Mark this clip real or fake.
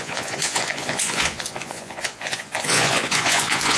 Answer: fake